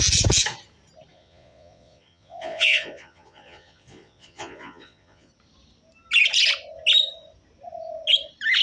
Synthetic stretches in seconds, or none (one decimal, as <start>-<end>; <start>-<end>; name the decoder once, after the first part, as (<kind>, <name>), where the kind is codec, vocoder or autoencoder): 1.1-5.3 (vocoder, Vocos)